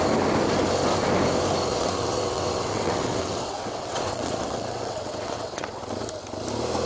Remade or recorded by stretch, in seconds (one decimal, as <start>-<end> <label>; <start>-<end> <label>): 0.0-1.7 recorded; 1.7-5.8 remade; 5.8-6.9 recorded